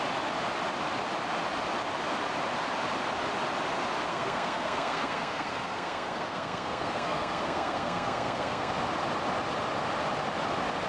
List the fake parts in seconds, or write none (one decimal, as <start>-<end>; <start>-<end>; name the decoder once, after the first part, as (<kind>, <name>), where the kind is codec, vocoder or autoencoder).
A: 4.1-8.7 (codec, SNAC)